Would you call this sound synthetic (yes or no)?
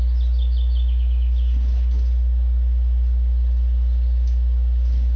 no